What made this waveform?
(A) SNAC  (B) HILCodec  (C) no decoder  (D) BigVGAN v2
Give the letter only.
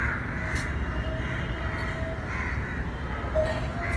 C